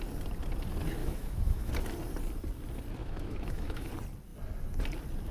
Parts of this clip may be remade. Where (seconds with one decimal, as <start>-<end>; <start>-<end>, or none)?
1.0-1.7; 3.0-3.9